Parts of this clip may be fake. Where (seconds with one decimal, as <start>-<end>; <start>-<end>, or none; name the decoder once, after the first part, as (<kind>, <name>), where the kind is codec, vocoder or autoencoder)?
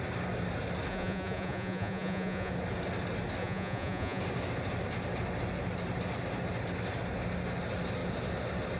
0.9-2.5 (vocoder, Vocos); 3.4-4.2